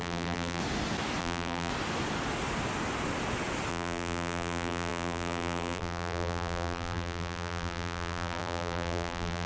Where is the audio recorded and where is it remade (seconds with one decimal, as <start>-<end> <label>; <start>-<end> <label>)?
0.0-0.6 remade; 0.6-1.2 recorded; 1.2-1.7 remade; 1.7-3.7 recorded; 3.7-9.5 remade